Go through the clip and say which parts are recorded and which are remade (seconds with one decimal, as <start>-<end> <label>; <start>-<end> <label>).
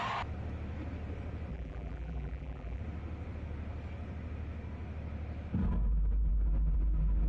0.0-1.5 recorded; 1.5-2.8 remade; 2.8-7.3 recorded